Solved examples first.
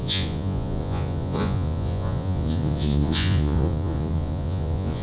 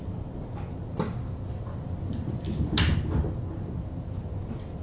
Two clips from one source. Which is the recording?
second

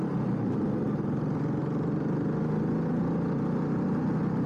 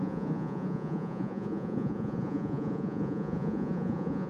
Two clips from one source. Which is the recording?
first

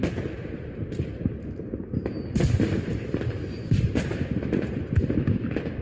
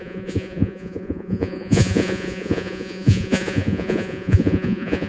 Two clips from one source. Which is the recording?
first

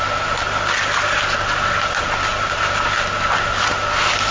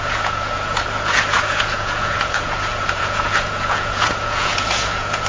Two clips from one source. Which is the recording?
first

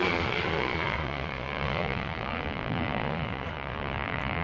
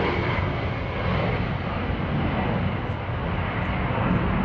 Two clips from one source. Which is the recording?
second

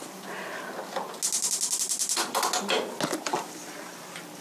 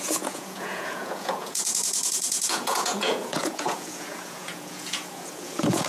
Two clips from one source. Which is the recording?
first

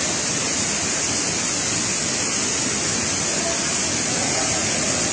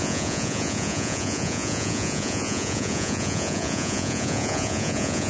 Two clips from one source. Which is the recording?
first